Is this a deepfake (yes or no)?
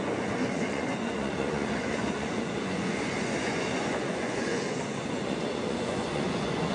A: yes